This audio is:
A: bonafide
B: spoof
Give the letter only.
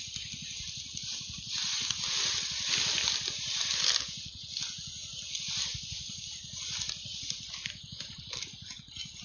A